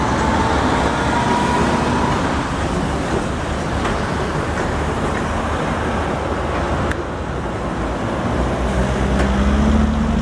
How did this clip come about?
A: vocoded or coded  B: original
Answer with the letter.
B